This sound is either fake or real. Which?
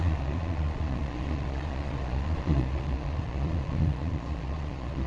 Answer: fake